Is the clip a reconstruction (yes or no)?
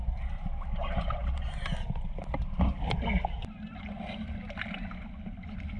no